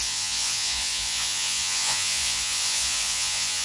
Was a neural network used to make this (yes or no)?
yes